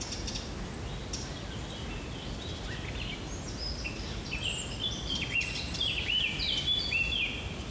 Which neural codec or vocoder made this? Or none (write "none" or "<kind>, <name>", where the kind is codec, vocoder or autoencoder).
none